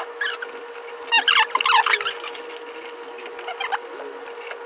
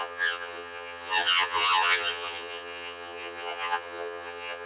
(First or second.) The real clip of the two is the first